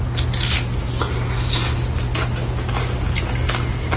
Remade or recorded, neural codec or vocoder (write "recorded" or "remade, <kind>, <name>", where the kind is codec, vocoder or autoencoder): recorded